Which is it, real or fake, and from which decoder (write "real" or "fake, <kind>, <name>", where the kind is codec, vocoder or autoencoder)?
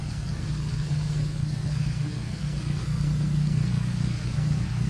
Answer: fake, codec, SNAC